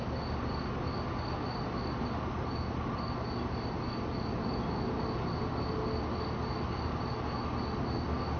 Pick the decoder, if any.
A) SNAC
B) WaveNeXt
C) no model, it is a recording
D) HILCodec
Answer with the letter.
C